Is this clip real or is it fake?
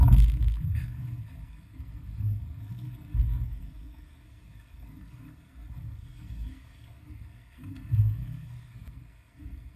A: fake